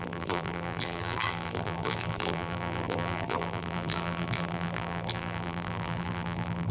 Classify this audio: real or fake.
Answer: fake